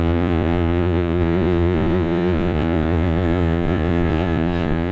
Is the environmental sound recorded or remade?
remade